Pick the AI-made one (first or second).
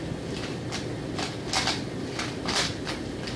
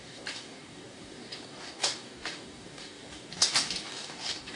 second